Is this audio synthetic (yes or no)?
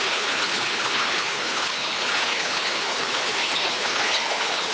yes